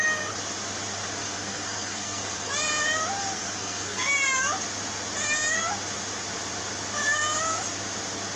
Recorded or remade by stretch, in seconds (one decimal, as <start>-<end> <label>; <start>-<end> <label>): 0.0-1.2 recorded; 1.2-2.5 remade; 2.5-3.2 recorded; 3.2-4.1 remade; 4.1-8.4 recorded